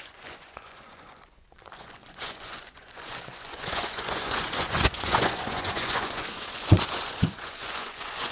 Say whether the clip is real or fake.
fake